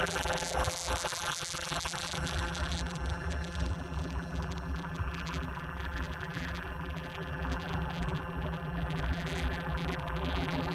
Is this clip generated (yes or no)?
yes